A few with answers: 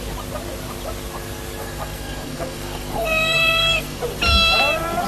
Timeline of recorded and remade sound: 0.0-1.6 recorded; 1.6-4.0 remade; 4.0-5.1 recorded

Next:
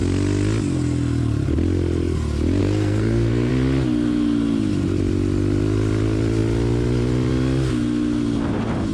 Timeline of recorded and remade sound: 0.0-2.6 recorded; 2.6-3.5 remade; 3.5-8.9 recorded